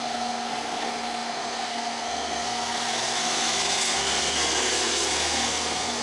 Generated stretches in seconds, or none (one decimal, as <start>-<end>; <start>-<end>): 0.0-6.0

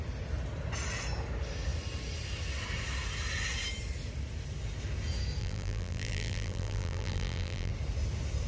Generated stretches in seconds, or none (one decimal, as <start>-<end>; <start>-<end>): 5.4-7.7

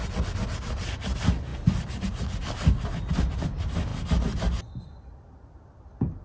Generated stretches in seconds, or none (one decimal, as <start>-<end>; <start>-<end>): none

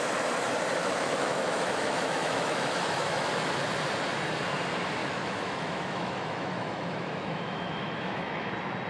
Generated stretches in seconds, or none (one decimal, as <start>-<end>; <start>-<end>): 0.8-3.3; 5.0-8.5